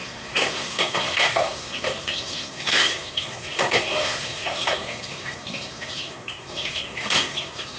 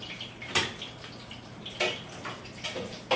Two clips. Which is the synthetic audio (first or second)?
first